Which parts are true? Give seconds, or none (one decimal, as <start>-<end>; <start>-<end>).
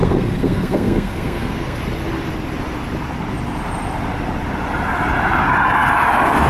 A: 1.8-6.5